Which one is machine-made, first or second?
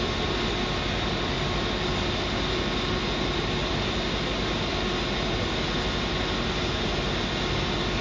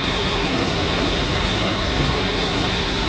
second